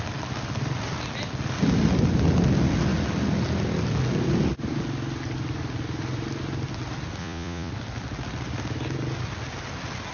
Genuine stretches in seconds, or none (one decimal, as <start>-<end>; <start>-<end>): 0.0-7.2; 7.7-10.1